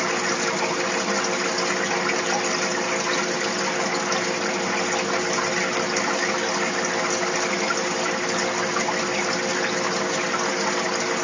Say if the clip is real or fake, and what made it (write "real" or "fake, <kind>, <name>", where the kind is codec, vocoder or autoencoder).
real